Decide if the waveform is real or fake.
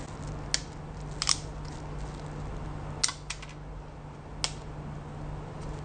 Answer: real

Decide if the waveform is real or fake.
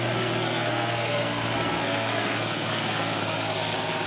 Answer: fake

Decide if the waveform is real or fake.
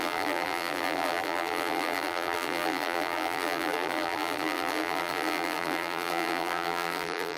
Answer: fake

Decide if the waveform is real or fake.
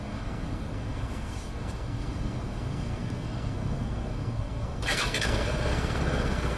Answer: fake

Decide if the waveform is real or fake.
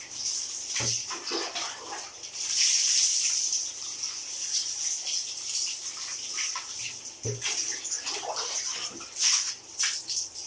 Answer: real